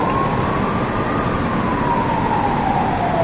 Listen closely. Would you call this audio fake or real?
real